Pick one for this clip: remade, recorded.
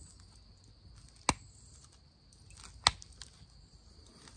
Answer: recorded